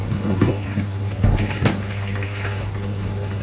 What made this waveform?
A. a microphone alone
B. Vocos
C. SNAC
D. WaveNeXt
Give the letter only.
C